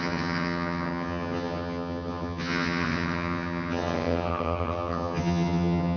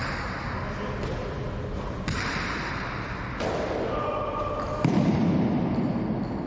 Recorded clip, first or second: second